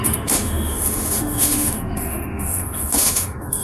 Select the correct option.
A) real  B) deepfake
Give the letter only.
B